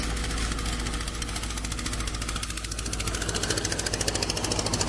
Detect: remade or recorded recorded